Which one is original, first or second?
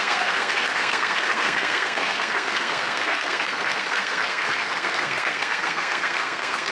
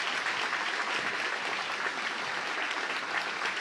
second